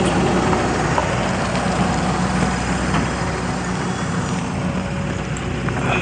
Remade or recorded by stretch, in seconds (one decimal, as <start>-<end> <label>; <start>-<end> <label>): 0.0-6.0 recorded